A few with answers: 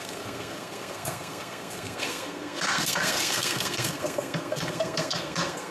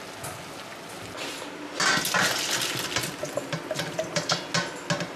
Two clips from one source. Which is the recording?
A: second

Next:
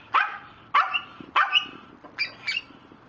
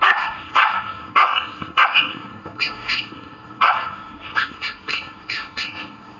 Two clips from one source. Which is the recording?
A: first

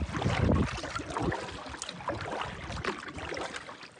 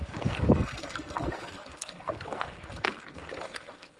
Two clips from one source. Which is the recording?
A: first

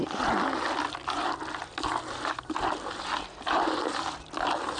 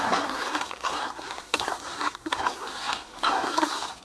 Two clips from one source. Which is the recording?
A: first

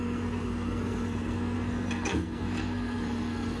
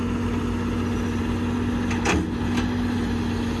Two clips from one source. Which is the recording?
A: second